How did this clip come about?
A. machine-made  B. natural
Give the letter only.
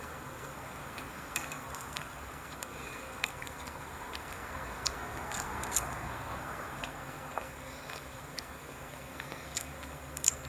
A